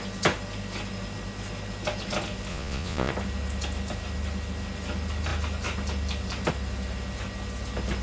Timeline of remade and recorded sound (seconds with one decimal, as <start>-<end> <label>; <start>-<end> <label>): 0.0-2.5 recorded; 2.5-3.1 remade; 3.1-8.0 recorded